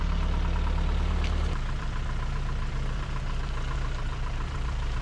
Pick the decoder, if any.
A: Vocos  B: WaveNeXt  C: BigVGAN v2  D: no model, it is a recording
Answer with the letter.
C